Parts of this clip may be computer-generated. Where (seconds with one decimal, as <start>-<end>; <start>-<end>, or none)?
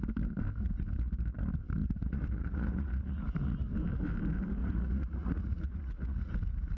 1.8-3.2; 4.6-6.3